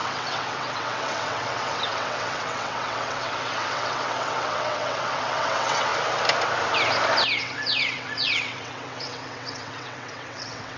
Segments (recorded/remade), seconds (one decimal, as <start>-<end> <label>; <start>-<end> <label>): 0.0-5.9 remade; 5.9-7.4 recorded; 7.4-10.8 remade

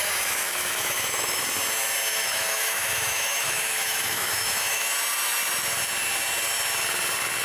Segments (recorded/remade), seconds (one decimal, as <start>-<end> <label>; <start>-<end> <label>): 0.0-1.4 remade; 1.4-2.1 recorded; 2.1-4.9 remade; 4.9-7.4 recorded

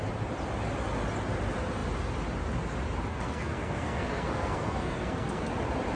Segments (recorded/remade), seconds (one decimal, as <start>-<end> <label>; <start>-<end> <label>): 0.0-3.1 recorded; 3.1-5.5 remade; 5.5-6.0 recorded